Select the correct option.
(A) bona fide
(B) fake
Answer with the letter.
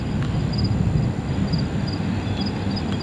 A